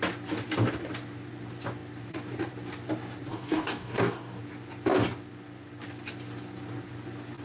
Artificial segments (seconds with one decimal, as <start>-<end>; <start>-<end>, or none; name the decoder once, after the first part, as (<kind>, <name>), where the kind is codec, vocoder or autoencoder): 3.3-4.4 (codec, DAC)